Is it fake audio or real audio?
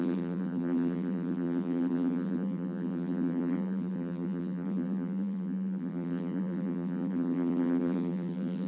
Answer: fake